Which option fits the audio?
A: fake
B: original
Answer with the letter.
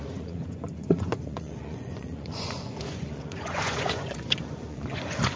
A